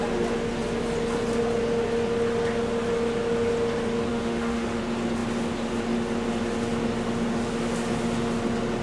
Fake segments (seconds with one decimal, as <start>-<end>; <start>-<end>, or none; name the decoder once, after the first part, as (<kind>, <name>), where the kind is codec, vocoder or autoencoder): 4.1-4.8 (autoencoder, DAC-VAE)